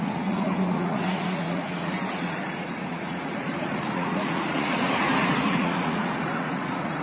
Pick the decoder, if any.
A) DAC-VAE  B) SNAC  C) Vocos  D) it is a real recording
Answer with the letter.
C